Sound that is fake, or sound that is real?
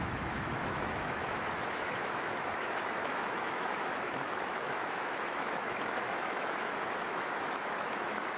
fake